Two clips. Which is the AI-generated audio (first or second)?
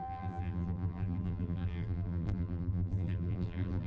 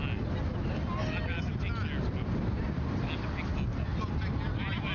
first